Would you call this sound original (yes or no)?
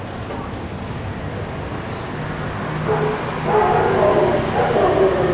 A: yes